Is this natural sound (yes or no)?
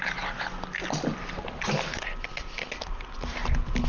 yes